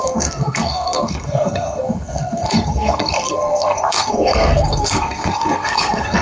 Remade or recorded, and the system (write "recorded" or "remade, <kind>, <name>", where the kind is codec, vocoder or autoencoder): remade, codec, SNAC